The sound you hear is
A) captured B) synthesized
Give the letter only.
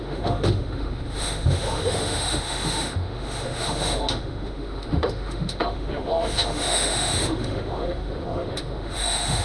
B